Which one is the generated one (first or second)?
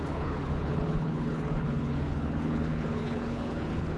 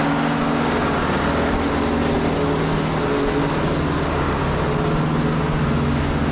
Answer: first